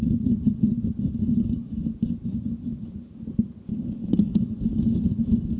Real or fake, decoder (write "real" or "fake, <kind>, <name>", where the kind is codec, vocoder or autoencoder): real